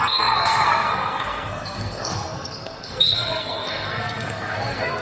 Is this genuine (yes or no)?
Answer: no